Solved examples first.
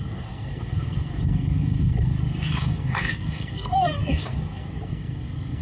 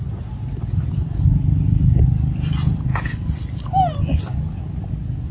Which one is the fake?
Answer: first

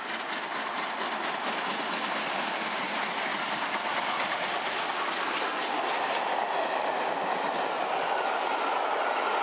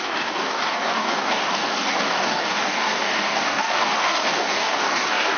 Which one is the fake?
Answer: second